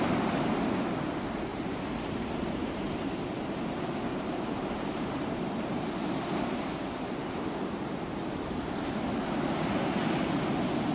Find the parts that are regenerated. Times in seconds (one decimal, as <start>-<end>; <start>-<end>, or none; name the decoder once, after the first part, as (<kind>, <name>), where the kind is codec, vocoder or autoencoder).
1.5-3.1 (vocoder, BigVGAN v2); 4.1-5.9